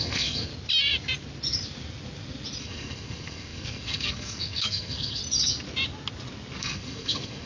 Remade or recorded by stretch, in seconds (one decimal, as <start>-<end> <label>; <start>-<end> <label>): 0.0-0.5 remade; 0.5-2.6 recorded; 2.6-5.2 remade; 5.2-6.6 recorded; 6.6-7.5 remade